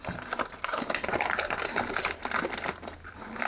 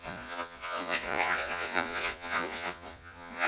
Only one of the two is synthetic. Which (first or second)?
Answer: second